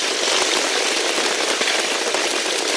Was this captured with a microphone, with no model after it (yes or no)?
yes